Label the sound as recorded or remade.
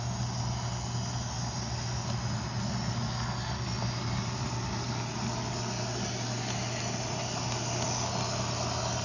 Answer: recorded